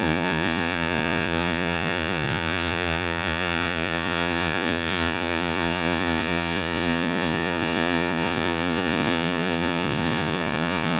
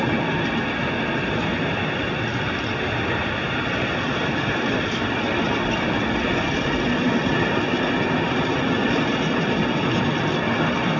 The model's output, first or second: first